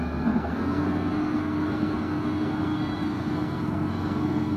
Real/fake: fake